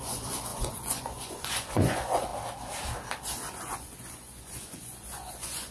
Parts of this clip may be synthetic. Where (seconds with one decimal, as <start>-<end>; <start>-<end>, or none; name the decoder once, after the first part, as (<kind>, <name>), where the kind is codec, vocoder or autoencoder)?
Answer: 0.0-2.3 (vocoder, Vocos); 3.4-5.7